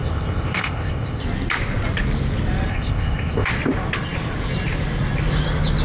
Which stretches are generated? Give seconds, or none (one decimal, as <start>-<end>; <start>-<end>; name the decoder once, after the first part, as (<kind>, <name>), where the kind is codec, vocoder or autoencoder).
0.0-1.2 (codec, ZipCodec); 2.7-3.5